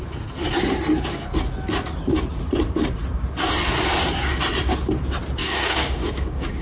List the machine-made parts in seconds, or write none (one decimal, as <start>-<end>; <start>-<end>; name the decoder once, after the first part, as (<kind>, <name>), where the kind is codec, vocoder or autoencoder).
5.4-6.6 (codec, DAC)